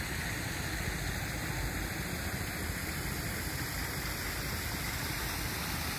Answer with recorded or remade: recorded